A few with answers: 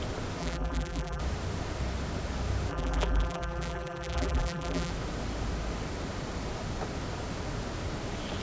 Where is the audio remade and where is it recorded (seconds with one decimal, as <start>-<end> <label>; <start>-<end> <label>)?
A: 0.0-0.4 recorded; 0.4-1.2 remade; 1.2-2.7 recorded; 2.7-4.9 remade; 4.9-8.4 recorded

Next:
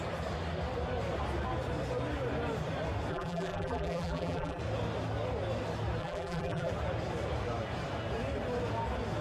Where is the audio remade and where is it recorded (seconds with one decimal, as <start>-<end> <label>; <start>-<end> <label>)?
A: 0.0-3.1 recorded; 3.1-4.6 remade; 4.6-6.0 recorded; 6.0-6.7 remade; 6.7-9.2 recorded

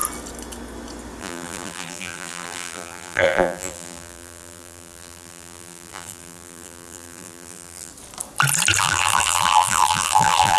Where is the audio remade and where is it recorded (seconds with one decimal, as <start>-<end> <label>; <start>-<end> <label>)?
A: 0.0-1.2 recorded; 1.2-7.9 remade; 7.9-8.8 recorded; 8.8-10.6 remade

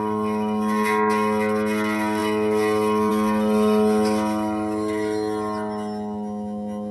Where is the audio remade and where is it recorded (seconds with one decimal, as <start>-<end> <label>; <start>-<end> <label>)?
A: 0.0-6.9 recorded

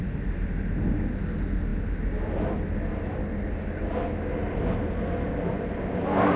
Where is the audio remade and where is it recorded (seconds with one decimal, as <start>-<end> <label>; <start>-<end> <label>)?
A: 0.0-6.4 recorded